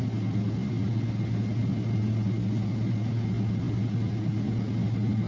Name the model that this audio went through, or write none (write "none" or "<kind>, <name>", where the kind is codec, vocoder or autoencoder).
none